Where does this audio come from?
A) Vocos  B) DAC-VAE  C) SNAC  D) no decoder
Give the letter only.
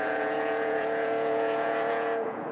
A